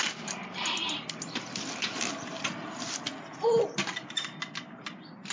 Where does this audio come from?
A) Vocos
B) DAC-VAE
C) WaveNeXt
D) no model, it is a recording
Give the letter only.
D